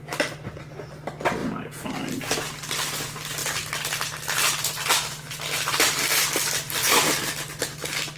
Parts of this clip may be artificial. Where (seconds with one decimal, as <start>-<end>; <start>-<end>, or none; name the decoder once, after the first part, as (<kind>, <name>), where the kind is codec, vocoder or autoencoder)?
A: 1.4-1.9 (vocoder, Vocos)